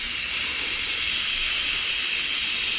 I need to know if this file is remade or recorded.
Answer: recorded